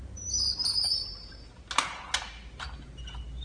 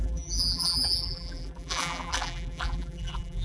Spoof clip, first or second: second